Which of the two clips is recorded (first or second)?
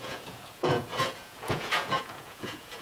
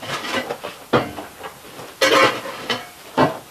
second